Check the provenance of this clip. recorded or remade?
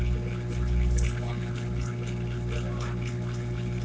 recorded